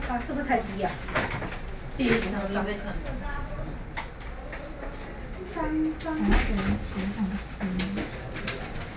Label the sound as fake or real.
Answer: real